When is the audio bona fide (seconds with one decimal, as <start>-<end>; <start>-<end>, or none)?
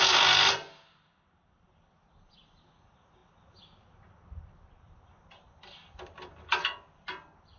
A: 0.0-7.6